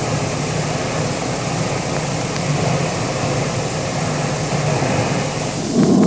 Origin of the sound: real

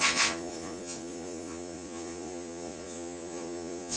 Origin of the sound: fake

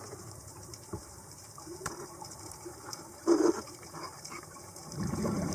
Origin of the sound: fake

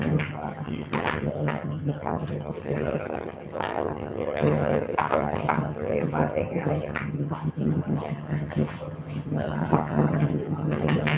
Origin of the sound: fake